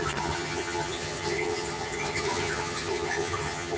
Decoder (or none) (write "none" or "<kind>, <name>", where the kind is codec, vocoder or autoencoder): vocoder, HiFi-GAN